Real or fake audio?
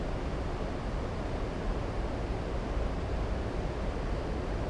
real